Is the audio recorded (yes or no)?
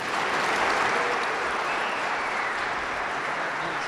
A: no